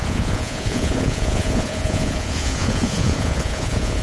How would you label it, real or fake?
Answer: fake